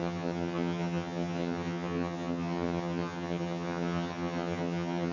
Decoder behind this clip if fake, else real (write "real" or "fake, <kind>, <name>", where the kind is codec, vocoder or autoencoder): fake, vocoder, HiFi-GAN